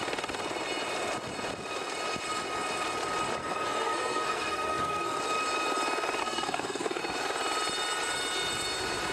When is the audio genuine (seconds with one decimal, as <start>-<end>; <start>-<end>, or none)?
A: 0.0-3.4; 5.2-6.2; 7.0-9.1